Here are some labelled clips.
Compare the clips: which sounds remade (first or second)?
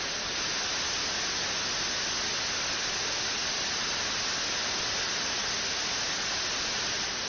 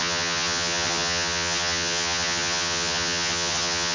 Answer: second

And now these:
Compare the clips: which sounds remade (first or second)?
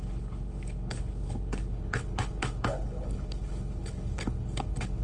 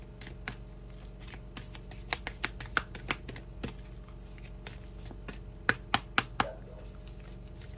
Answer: first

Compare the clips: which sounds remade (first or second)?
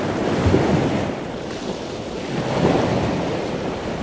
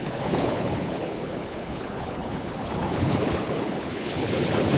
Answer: second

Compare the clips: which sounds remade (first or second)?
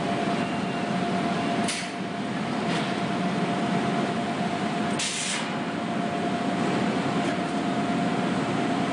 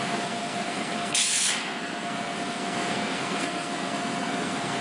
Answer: second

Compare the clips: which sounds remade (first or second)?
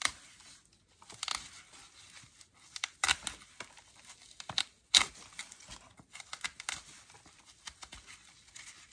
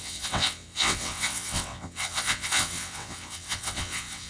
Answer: second